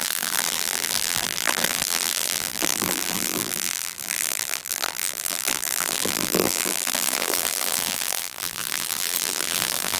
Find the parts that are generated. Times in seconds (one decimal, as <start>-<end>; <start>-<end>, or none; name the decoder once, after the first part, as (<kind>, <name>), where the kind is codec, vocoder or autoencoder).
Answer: 0.0-10.0 (vocoder, BigVGAN v2)